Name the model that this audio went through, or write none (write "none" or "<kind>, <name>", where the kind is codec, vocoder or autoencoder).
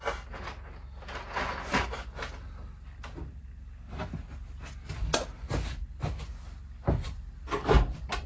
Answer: none